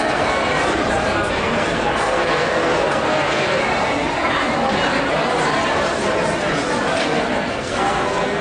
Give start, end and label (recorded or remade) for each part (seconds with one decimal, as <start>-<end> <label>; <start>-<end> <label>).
0.0-0.5 remade; 0.5-1.3 recorded; 1.3-3.6 remade; 3.6-7.0 recorded; 7.0-8.4 remade